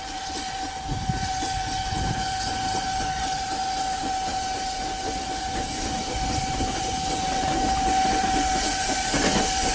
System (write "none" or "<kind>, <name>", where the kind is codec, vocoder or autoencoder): none